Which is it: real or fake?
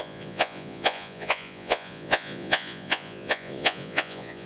fake